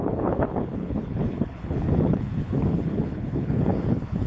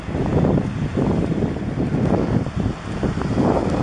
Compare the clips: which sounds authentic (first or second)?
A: second